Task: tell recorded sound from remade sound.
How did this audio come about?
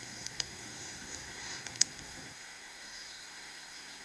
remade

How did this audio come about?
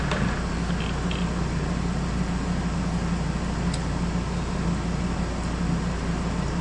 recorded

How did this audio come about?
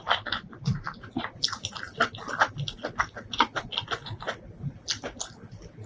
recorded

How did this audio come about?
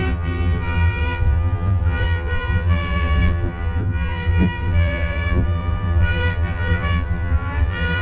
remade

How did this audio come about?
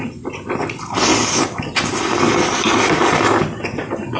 recorded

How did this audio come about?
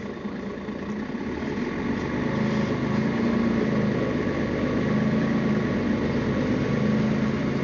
recorded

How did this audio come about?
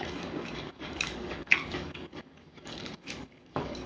remade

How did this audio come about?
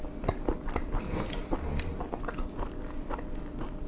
recorded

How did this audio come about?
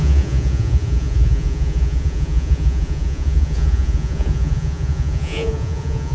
remade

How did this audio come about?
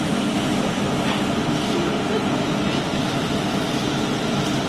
recorded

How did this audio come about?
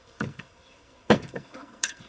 remade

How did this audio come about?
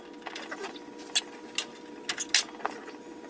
recorded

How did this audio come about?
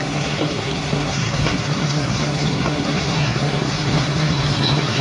remade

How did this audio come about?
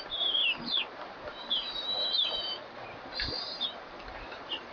remade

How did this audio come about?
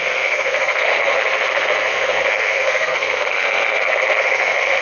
remade